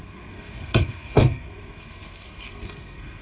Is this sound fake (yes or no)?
yes